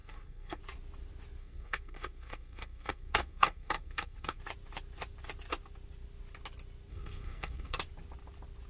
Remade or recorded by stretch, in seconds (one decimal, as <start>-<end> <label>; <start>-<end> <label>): 0.0-0.6 remade; 0.6-1.4 recorded; 1.4-4.4 remade; 4.4-6.9 recorded; 6.9-7.8 remade; 7.8-8.7 recorded